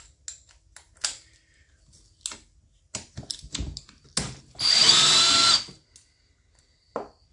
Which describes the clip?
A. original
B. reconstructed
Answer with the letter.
A